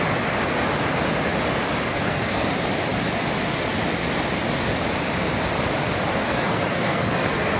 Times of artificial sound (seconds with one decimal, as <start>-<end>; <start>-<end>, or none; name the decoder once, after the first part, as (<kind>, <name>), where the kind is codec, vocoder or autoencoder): 1.9-2.5 (codec, SNAC); 6.1-7.6